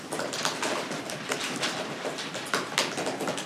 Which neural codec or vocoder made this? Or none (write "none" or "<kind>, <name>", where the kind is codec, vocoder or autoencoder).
none